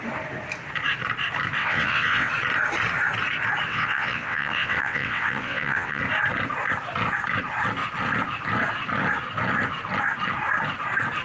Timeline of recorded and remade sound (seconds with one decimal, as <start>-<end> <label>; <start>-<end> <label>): 0.0-1.6 recorded; 1.6-2.3 remade; 2.3-3.7 recorded; 3.7-6.0 remade; 6.0-11.2 recorded